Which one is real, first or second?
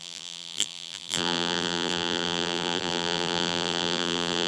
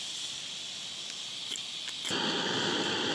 second